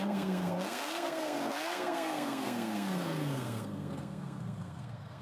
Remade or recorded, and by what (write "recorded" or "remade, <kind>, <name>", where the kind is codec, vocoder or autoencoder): remade, codec, SNAC